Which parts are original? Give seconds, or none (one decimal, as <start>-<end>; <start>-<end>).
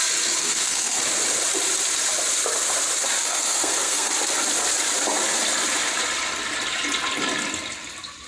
0.0-0.4; 1.0-3.2; 4.1-8.3